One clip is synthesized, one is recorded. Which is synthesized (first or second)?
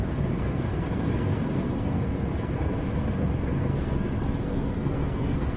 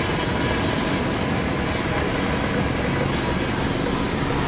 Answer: first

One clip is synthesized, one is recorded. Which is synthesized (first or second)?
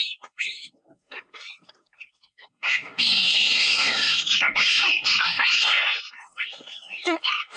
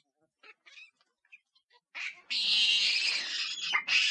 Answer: first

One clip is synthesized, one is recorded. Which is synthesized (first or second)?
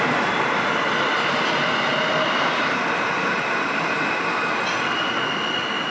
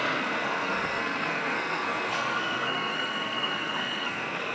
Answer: second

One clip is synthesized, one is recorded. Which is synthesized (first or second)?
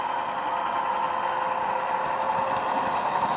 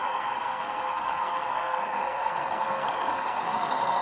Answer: second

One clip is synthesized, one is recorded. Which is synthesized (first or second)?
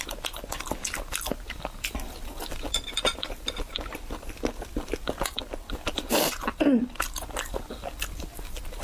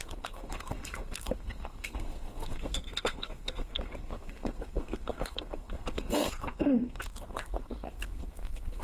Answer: second